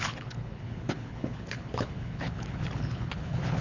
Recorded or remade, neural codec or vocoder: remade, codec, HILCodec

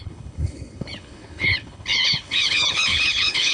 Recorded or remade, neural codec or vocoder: remade, codec, HILCodec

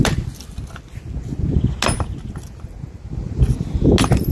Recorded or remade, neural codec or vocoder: recorded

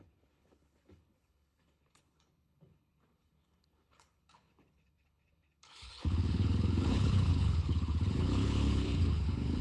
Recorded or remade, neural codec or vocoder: remade, codec, HILCodec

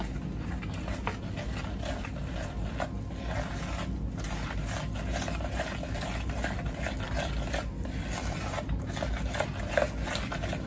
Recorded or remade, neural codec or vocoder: recorded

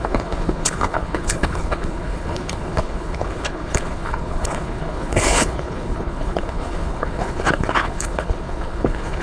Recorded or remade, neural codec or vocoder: remade, codec, HILCodec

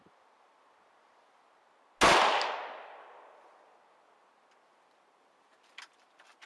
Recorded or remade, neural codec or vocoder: recorded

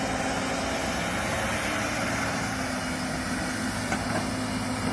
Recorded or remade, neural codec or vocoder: recorded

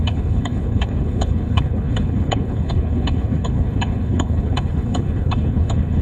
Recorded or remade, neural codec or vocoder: remade, codec, HILCodec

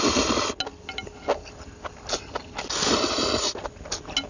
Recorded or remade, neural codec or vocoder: recorded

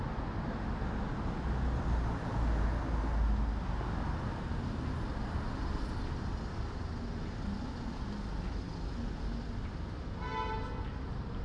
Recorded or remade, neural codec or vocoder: recorded